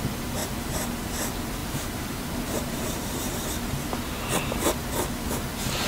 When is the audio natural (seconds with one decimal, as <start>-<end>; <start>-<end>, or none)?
0.0-0.4; 0.9-1.6; 3.9-5.9